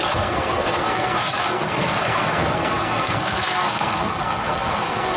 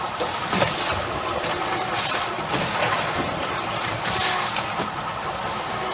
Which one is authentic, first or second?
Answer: second